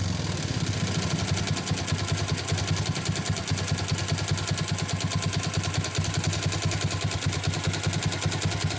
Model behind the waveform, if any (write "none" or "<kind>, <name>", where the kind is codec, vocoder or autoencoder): none